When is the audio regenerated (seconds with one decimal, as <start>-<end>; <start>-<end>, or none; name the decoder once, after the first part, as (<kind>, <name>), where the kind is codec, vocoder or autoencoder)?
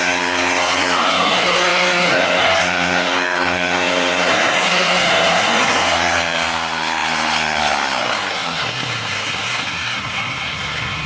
0.0-11.1 (codec, SNAC)